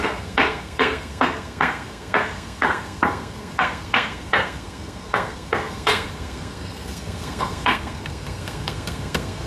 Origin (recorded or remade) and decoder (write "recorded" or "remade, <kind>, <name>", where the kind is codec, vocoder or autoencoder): remade, codec, SNAC